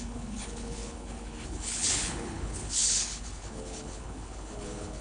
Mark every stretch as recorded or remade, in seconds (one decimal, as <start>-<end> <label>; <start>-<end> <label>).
0.0-5.0 remade